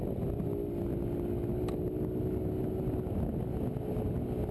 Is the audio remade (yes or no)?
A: no